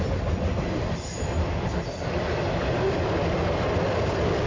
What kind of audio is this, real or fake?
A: real